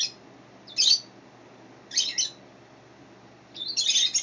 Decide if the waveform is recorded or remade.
recorded